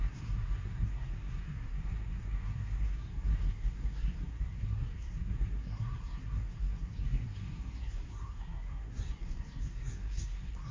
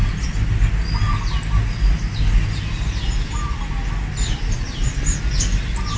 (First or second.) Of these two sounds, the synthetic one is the first